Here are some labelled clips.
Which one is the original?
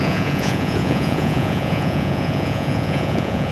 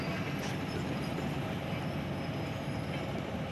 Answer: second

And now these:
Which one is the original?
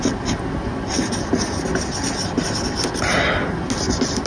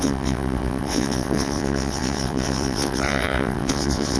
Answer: first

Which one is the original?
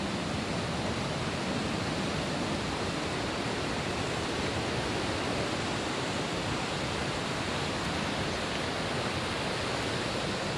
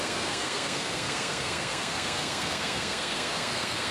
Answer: first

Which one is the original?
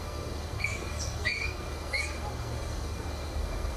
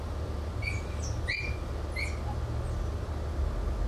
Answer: second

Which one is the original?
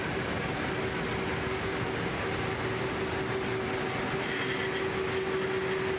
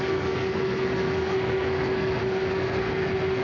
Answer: first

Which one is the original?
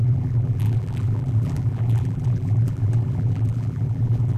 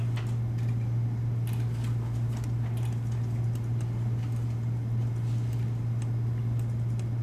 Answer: second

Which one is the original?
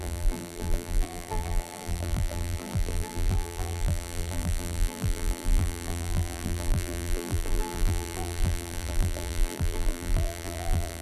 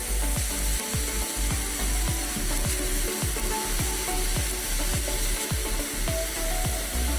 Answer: second